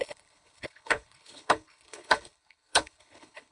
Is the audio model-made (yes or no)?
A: yes